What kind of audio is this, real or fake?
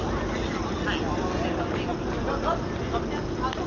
real